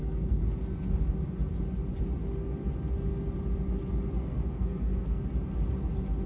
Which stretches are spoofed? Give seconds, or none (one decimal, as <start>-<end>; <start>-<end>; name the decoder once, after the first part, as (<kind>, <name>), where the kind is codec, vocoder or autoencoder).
0.0-0.4 (codec, SNAC); 4.2-5.2